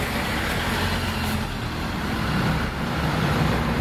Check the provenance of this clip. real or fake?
real